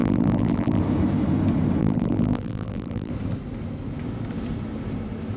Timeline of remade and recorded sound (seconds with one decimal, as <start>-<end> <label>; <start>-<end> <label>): 0.0-0.8 remade; 0.8-1.8 recorded; 1.8-3.1 remade; 3.1-5.4 recorded